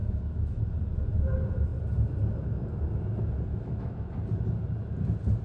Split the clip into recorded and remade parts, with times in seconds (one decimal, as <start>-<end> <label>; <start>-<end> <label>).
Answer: 0.0-0.6 remade; 0.6-3.5 recorded; 3.5-4.1 remade; 4.1-5.4 recorded

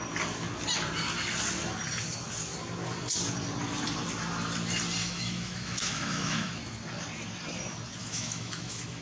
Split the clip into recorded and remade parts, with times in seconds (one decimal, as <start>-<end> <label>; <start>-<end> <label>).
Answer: 0.0-5.0 recorded; 5.0-6.5 remade; 6.5-8.0 recorded; 8.0-9.0 remade